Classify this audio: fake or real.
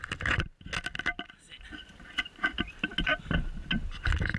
real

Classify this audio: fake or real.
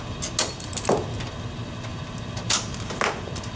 real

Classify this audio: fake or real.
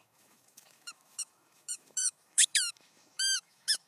fake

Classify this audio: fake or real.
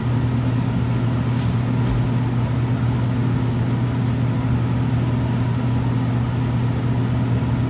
real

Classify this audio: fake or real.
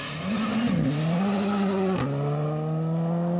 real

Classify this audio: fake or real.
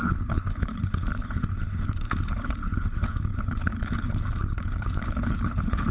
fake